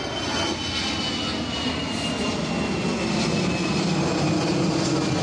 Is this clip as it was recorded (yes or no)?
yes